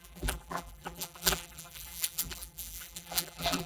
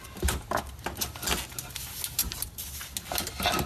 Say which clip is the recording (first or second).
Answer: second